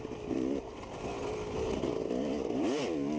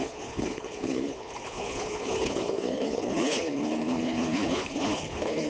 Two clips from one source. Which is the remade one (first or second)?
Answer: second